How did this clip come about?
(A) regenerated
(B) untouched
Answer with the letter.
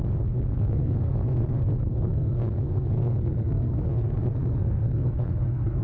A